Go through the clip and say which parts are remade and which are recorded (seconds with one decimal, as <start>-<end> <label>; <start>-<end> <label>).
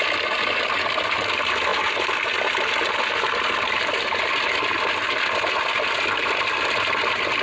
0.0-7.4 recorded